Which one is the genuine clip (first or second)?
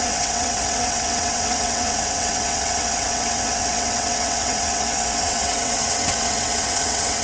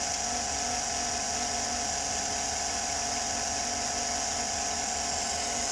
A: second